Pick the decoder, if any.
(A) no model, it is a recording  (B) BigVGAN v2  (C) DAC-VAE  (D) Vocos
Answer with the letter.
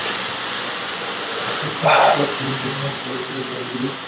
D